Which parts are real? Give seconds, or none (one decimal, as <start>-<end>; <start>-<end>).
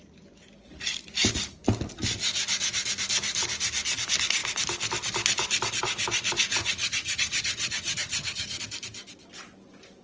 0.0-6.6; 8.6-10.0